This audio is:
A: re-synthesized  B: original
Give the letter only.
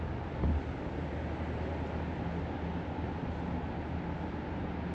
B